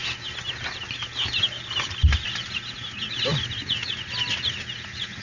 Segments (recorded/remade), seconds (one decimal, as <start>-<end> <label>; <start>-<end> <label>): 0.0-5.2 recorded